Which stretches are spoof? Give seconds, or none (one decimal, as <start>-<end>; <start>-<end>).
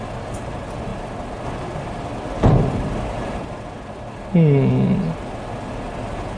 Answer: none